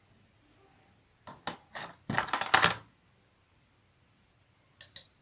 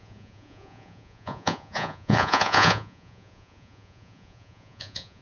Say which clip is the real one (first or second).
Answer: first